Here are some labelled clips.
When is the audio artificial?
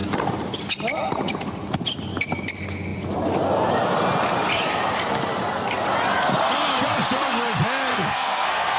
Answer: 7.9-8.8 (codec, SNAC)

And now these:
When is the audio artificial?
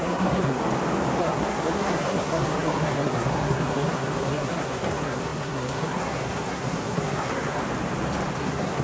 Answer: 0.0-0.6 (codec, SNAC); 1.2-7.6; 8.4-8.8